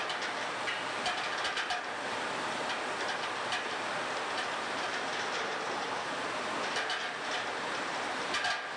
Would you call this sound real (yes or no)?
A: yes